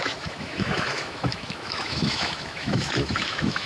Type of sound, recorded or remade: remade